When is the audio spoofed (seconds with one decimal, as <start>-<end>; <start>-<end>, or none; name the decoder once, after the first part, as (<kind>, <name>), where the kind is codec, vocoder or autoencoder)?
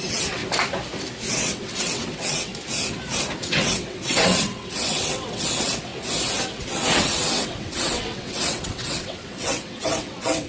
0.0-0.4 (vocoder, WaveNeXt); 1.3-2.5; 3.4-5.9; 6.6-10.5